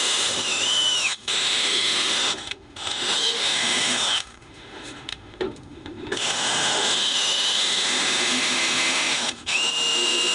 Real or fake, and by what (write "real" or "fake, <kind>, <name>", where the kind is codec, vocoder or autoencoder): fake, autoencoder, DAC-VAE